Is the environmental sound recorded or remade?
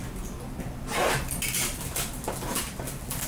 recorded